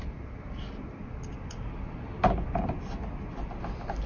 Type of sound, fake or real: real